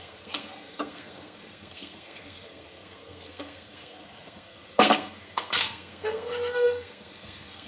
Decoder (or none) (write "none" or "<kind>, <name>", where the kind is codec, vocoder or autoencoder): codec, SNAC